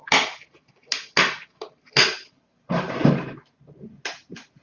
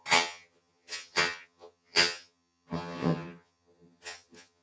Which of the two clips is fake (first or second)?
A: second